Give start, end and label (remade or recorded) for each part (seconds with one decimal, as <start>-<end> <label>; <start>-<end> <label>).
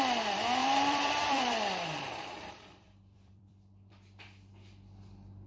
0.0-0.6 recorded; 0.6-3.9 remade; 3.9-5.5 recorded